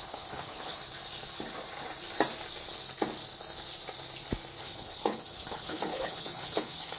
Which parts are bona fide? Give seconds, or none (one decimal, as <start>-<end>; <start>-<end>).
0.8-4.6